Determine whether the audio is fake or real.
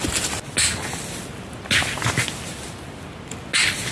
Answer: real